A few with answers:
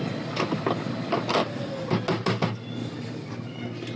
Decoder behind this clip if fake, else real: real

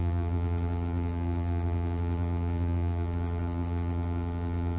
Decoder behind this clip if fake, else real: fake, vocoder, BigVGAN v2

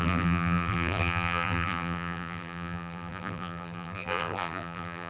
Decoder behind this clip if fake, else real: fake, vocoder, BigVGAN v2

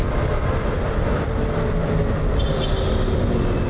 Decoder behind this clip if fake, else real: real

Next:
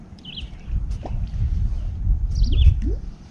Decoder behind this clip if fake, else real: fake, vocoder, BigVGAN v2